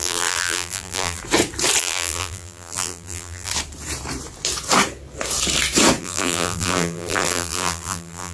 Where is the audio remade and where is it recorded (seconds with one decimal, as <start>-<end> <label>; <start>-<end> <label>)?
0.0-1.2 remade; 1.2-1.8 recorded; 1.8-3.5 remade; 3.5-6.0 recorded; 6.0-8.3 remade

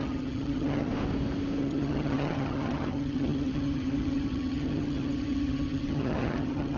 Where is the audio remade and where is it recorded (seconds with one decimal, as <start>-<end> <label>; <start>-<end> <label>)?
0.0-0.9 remade; 0.9-1.6 recorded; 1.6-6.8 remade

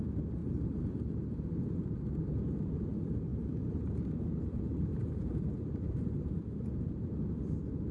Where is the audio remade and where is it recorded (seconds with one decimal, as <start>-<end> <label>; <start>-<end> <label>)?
0.0-0.4 recorded; 0.4-1.6 remade; 1.6-3.3 recorded; 3.3-7.1 remade; 7.1-7.9 recorded

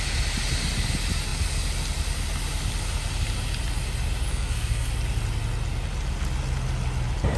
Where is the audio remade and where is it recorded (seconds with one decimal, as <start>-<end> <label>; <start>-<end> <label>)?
0.0-4.3 recorded; 4.3-4.9 remade; 4.9-7.4 recorded

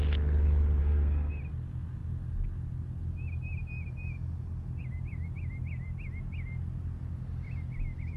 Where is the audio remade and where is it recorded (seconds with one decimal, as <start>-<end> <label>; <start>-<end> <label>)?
0.0-0.8 recorded; 0.8-1.3 remade; 1.3-8.2 recorded

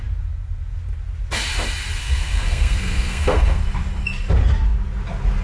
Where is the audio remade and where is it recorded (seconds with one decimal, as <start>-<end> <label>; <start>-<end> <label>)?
0.0-2.0 recorded; 2.0-3.6 remade; 3.6-5.4 recorded